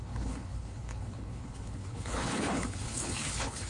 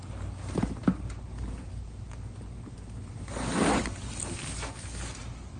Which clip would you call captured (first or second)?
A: second